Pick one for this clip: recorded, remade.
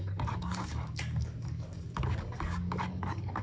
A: remade